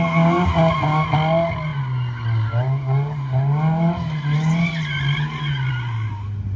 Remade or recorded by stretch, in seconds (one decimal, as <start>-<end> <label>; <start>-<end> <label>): 0.0-6.6 recorded